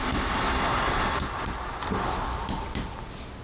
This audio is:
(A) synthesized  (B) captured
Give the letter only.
B